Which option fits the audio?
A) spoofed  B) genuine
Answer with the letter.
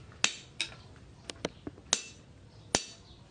B